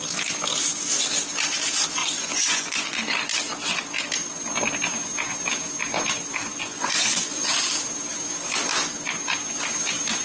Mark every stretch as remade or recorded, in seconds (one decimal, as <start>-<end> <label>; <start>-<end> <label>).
0.0-2.0 recorded; 2.0-3.0 remade; 3.0-6.5 recorded; 6.5-7.5 remade; 7.5-10.2 recorded